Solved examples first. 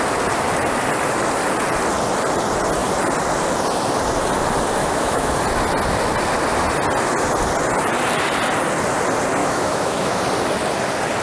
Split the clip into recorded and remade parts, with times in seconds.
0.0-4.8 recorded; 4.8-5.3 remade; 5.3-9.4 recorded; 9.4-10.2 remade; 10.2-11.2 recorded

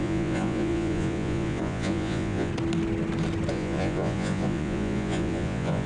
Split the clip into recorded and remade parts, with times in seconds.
0.0-2.5 remade; 2.5-3.5 recorded; 3.5-5.9 remade